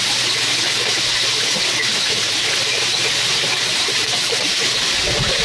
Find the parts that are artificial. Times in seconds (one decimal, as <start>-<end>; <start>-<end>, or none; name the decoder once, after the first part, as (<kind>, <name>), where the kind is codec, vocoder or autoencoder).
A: 1.5-4.7 (vocoder, BigVGAN v2)